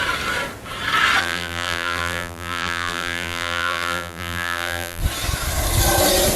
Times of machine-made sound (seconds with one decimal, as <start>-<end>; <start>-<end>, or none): 1.2-5.0